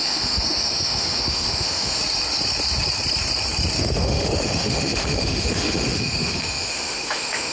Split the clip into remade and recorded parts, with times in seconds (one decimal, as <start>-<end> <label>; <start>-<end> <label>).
0.0-2.0 remade; 2.0-3.8 recorded; 3.8-7.5 remade